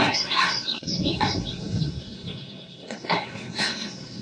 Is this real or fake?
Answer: fake